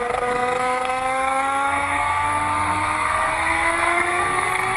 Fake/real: fake